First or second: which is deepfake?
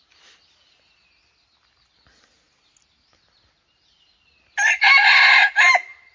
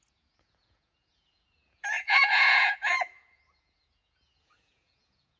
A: second